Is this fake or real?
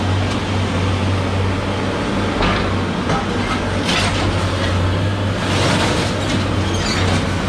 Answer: real